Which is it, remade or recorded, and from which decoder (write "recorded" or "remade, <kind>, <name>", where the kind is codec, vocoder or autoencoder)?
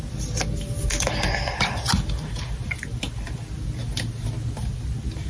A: recorded